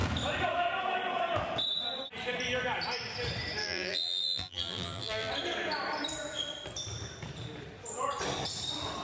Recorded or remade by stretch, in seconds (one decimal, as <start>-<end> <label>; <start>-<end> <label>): 0.0-3.6 recorded; 3.6-5.3 remade; 5.3-9.0 recorded